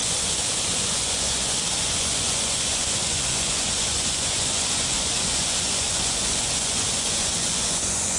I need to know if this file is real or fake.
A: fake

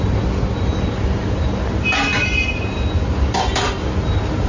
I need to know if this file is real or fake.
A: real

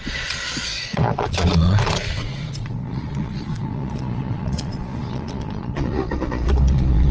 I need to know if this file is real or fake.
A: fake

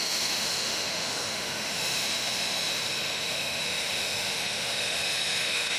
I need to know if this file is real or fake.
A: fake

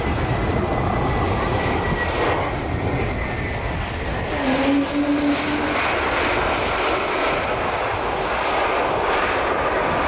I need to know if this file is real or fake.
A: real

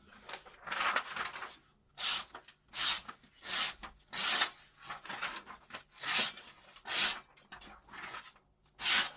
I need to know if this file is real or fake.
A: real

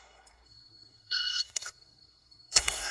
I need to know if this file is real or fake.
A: fake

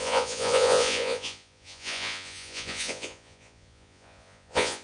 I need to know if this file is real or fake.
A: fake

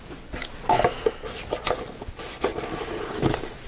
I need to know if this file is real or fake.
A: real